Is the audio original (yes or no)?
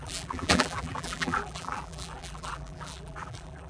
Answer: no